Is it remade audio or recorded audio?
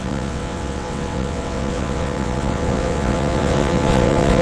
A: remade